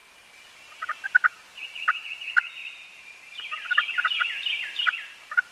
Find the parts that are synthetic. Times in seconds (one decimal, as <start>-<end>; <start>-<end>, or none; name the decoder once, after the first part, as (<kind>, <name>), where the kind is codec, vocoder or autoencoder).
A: none